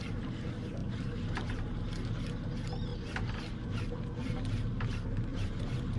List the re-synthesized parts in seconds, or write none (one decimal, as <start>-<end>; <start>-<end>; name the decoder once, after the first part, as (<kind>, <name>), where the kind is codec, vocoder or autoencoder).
0.8-1.8 (vocoder, BigVGAN v2); 5.3-6.0